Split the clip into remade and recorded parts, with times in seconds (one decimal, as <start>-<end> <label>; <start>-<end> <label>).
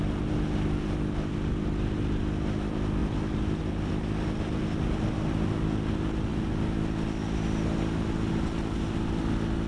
0.0-9.7 recorded